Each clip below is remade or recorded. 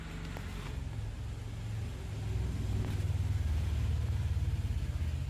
recorded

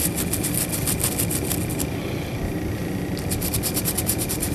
recorded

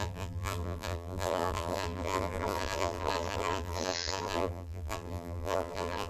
remade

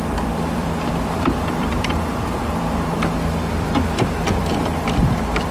remade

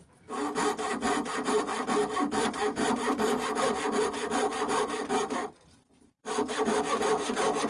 remade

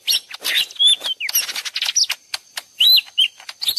recorded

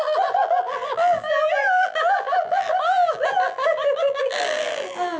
remade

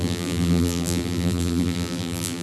remade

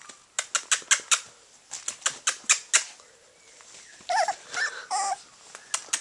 recorded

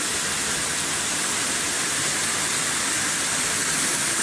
recorded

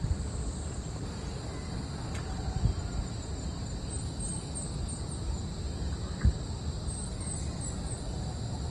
recorded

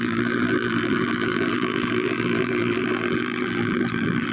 remade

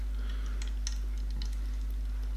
recorded